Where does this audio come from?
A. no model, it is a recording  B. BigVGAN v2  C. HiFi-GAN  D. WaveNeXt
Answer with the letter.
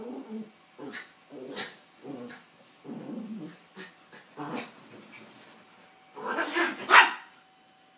A